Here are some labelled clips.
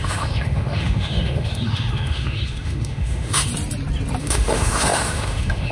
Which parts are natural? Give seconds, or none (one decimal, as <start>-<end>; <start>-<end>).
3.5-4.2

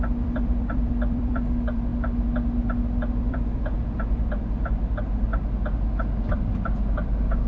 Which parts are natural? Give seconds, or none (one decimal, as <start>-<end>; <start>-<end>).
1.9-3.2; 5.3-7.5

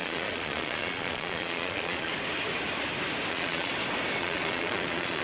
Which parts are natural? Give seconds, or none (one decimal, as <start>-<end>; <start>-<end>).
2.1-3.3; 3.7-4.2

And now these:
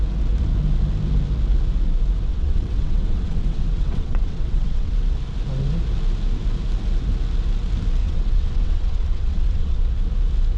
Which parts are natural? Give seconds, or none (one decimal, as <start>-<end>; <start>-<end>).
0.0-2.3; 4.9-8.0; 9.8-10.6

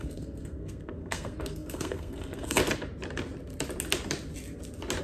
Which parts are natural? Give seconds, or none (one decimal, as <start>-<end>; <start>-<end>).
2.6-5.0